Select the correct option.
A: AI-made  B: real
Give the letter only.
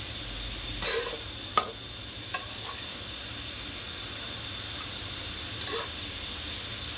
B